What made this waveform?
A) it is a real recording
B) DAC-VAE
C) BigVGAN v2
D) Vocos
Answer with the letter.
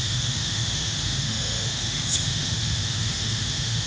B